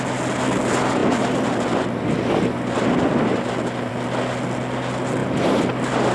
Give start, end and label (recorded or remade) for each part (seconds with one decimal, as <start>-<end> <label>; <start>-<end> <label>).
0.0-6.1 recorded